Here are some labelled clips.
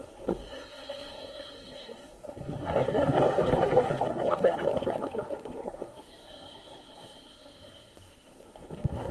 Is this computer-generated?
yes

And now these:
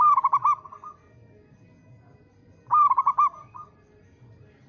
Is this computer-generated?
no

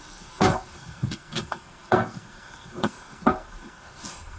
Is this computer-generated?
yes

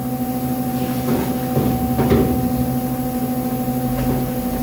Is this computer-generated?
no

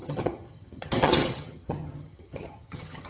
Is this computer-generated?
yes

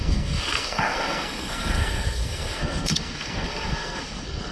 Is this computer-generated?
yes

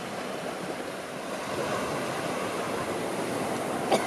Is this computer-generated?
no